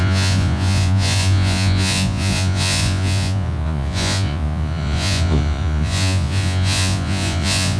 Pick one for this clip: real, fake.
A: fake